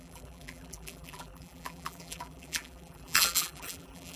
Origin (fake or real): fake